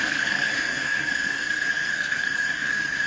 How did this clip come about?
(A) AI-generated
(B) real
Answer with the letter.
A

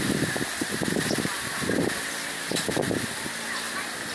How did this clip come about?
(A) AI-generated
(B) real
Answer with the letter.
B